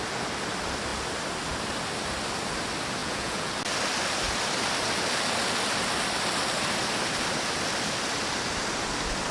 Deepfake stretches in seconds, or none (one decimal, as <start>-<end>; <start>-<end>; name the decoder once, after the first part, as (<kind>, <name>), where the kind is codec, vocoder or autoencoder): 3.0-3.5 (vocoder, Vocos)